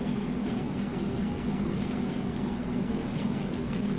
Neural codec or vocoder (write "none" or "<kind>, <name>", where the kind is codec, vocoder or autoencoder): codec, SNAC